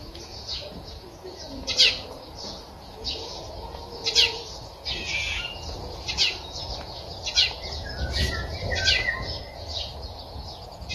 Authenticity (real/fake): fake